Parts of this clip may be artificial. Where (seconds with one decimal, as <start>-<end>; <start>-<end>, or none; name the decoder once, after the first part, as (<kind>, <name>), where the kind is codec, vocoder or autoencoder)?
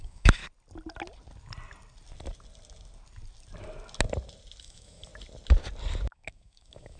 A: 0.0-0.4 (autoencoder, DAC-VAE); 4.6-5.1; 6.1-7.0